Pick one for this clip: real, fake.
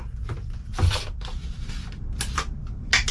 fake